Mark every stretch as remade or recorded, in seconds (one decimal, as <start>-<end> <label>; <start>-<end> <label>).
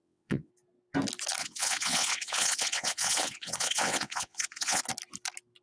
0.0-0.5 remade; 0.5-1.4 recorded; 1.4-4.8 remade; 4.8-5.6 recorded